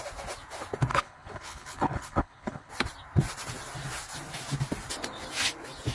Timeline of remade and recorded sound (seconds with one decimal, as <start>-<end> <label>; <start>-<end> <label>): 0.0-0.9 recorded; 0.9-2.7 remade; 2.7-5.9 recorded